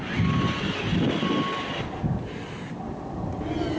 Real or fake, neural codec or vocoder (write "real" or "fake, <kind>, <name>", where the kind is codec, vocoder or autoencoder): real